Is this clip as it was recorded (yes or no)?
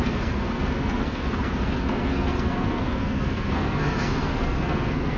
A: no